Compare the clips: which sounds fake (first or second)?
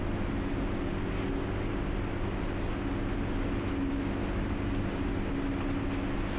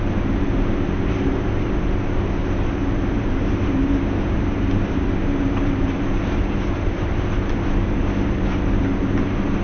second